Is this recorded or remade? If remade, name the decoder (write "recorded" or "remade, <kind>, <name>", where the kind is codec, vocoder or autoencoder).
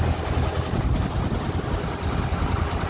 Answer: recorded